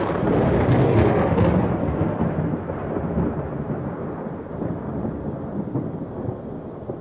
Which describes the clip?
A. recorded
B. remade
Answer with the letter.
A